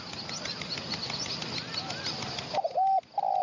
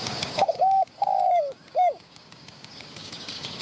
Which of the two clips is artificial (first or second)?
second